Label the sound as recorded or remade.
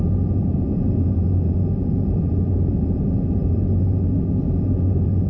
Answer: remade